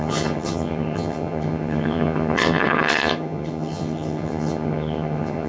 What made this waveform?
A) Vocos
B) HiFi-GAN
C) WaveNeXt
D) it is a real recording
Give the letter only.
B